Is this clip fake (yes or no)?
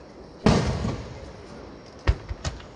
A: no